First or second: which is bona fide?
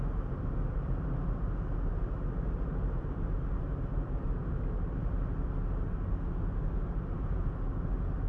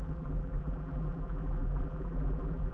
first